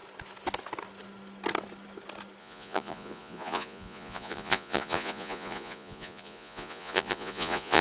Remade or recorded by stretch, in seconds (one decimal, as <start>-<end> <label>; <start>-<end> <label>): 0.0-2.4 recorded; 2.4-7.8 remade